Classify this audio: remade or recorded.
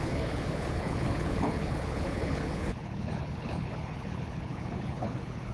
remade